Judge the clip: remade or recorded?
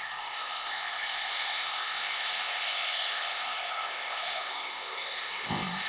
remade